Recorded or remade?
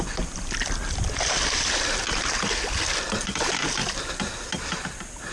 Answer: recorded